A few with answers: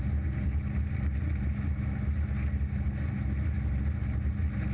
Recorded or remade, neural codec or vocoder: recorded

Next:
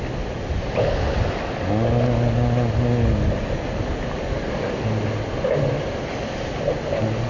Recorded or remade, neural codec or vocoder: recorded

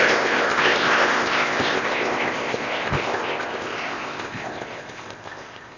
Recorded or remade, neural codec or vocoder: remade, codec, ZipCodec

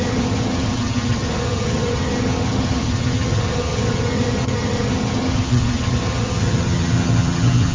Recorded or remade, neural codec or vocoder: remade, vocoder, HiFi-GAN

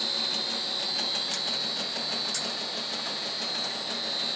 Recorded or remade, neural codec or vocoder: recorded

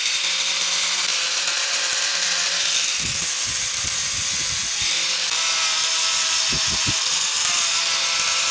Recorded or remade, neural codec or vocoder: recorded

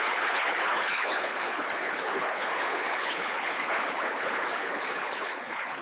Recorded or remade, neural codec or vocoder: remade, codec, HILCodec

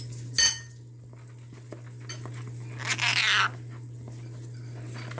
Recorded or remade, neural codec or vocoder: recorded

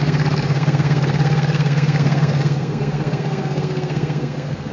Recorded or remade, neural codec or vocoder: remade, codec, SNAC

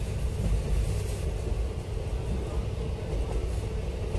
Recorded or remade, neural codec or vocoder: recorded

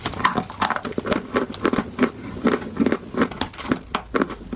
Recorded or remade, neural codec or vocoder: recorded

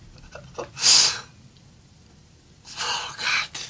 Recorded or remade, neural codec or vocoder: recorded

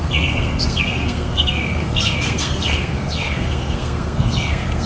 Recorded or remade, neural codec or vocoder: remade, codec, SNAC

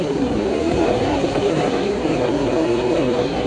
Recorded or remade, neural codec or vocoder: remade, codec, SNAC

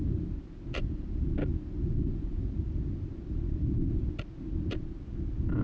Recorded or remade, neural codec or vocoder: recorded